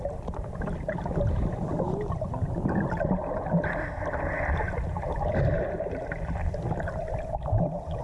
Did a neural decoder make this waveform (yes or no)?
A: no